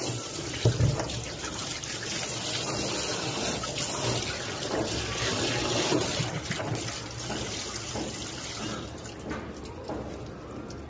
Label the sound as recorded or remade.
recorded